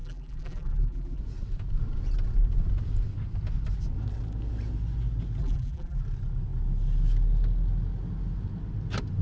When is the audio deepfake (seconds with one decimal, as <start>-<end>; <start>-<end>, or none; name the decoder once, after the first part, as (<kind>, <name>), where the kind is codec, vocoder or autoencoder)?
0.0-1.2 (vocoder, BigVGAN v2); 5.4-6.0

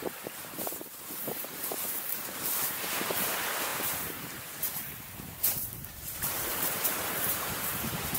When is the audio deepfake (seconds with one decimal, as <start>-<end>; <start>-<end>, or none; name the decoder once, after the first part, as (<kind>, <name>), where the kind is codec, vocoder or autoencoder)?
0.0-8.2 (vocoder, BigVGAN v2)